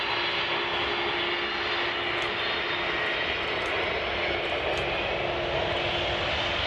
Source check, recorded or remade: recorded